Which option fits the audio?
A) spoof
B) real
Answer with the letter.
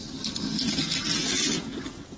B